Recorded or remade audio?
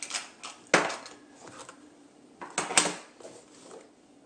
recorded